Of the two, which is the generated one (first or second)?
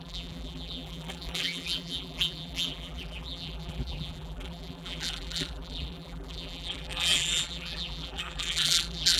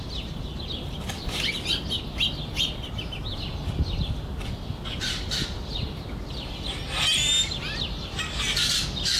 first